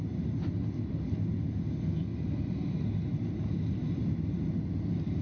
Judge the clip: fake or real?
real